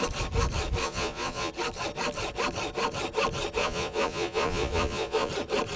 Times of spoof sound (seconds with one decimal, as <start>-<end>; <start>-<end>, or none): 0.8-1.5; 3.6-5.3